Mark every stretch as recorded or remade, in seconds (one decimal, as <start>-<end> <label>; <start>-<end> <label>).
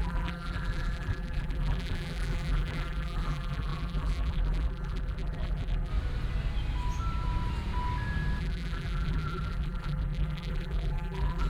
0.0-5.9 remade; 5.9-8.4 recorded; 8.4-11.5 remade